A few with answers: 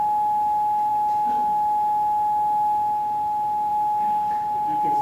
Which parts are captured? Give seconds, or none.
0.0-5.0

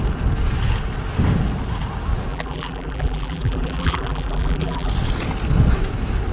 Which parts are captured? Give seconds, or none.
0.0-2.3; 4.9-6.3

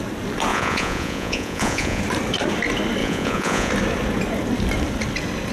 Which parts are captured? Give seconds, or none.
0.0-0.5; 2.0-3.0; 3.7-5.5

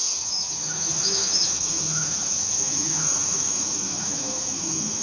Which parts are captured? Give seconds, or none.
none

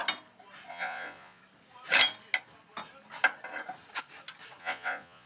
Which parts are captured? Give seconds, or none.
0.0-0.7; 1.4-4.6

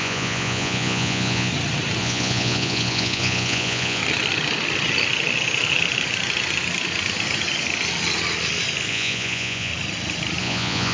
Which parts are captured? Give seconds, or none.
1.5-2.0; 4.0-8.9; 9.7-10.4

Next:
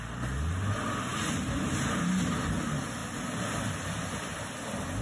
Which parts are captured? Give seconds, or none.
0.0-5.0

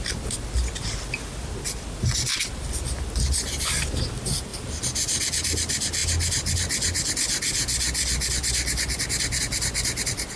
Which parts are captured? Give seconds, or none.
0.0-10.4